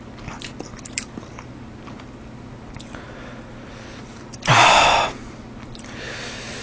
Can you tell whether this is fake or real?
real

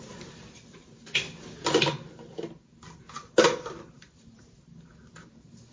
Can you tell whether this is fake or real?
real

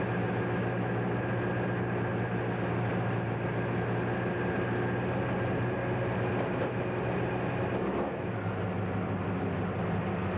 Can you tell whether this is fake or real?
real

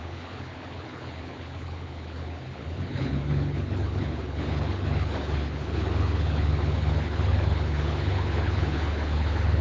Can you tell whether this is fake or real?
fake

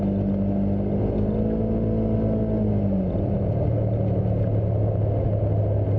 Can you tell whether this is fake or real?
real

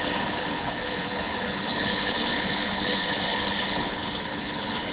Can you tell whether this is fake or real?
fake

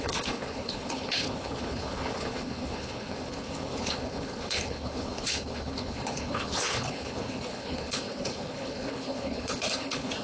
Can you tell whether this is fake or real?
fake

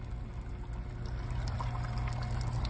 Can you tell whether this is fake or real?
real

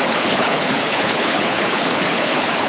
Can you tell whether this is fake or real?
fake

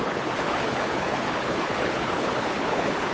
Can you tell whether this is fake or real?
fake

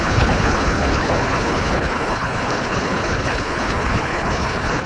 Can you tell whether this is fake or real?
fake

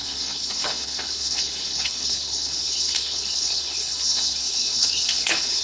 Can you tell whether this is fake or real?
fake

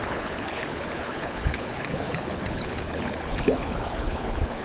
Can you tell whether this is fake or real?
fake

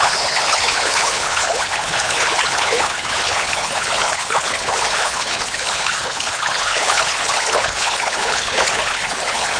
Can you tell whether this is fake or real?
fake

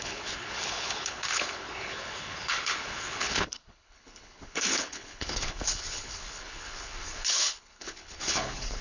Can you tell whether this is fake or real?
fake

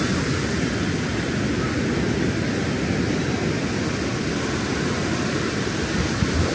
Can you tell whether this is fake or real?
real